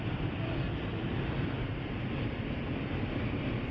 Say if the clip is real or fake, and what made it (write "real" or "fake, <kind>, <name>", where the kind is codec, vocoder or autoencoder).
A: fake, vocoder, BigVGAN v2